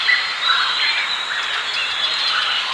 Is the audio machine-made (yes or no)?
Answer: yes